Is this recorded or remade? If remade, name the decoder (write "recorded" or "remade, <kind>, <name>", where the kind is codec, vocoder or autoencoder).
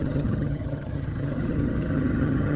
remade, vocoder, HiFi-GAN